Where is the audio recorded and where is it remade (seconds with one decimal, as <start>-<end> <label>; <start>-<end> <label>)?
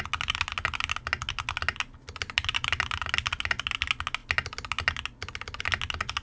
0.0-6.2 recorded